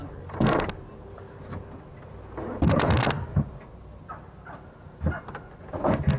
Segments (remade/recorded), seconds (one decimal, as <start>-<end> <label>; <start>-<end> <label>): 0.0-6.2 recorded